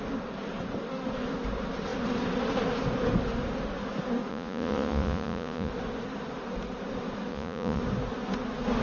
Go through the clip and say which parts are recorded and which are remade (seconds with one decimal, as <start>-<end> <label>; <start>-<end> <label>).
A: 0.0-4.3 recorded; 4.3-5.7 remade; 5.7-7.3 recorded; 7.3-7.8 remade; 7.8-8.8 recorded